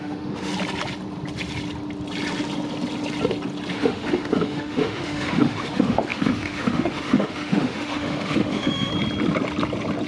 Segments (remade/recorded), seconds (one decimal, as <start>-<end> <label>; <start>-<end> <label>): 0.0-0.5 remade; 0.5-3.7 recorded; 3.7-8.9 remade; 8.9-10.1 recorded